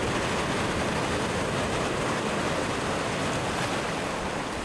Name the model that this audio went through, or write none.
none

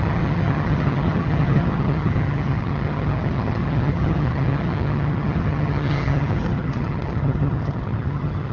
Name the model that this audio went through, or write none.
vocoder, HiFi-GAN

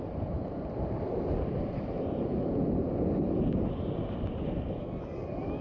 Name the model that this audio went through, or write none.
none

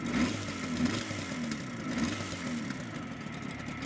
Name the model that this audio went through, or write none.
none